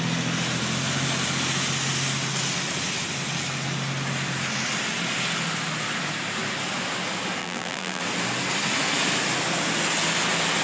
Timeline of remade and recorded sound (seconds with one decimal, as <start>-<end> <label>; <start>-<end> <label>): 0.0-7.4 recorded; 7.4-8.0 remade; 8.0-10.6 recorded